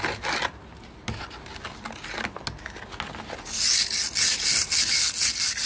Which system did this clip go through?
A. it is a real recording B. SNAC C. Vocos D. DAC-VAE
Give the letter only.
A